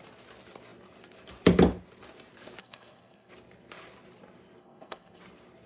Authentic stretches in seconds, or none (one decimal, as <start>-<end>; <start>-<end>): 0.0-2.6; 3.3-4.6; 5.2-5.7